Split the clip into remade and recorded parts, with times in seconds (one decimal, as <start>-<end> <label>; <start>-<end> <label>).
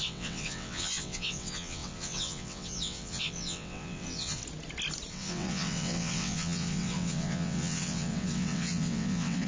0.0-4.4 remade; 4.4-5.1 recorded; 5.1-9.5 remade